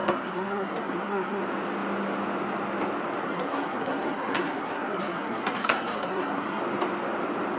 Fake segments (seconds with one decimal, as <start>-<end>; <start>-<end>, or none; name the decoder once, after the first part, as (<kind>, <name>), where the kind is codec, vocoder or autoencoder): 0.0-1.4 (codec, SNAC); 3.2-6.6